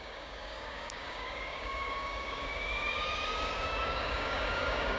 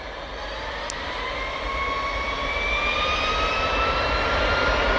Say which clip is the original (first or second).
second